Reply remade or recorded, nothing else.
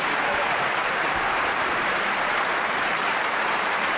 remade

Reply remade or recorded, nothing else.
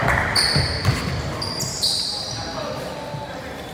recorded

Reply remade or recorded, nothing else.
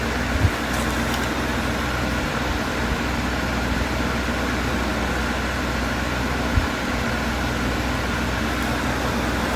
recorded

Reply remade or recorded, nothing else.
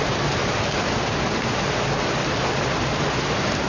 recorded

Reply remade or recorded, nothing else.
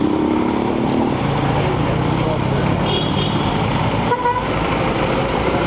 remade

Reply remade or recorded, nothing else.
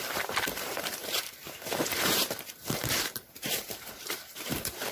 remade